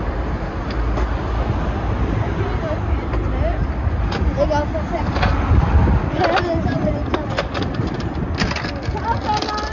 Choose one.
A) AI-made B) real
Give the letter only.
B